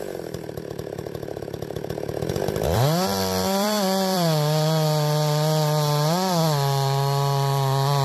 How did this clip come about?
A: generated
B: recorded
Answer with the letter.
A